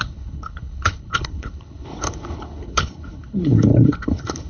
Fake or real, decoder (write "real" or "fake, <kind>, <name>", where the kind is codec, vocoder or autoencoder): fake, codec, HILCodec